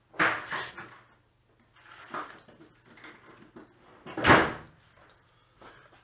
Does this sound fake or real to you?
real